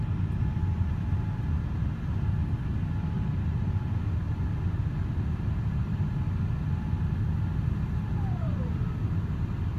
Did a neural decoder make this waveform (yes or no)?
no